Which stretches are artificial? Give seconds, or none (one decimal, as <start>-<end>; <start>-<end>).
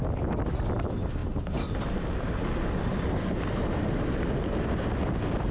none